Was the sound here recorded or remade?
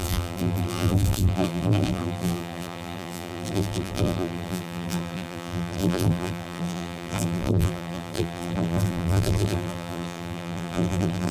remade